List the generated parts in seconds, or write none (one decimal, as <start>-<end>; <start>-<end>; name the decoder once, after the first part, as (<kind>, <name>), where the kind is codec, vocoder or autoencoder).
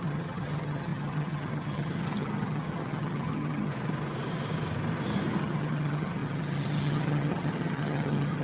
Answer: 0.0-3.7 (vocoder, HiFi-GAN); 5.4-8.4